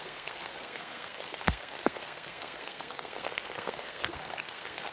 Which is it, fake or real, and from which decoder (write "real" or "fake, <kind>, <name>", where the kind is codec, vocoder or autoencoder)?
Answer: fake, codec, SNAC